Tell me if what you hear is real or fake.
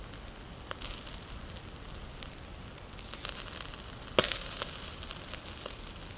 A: real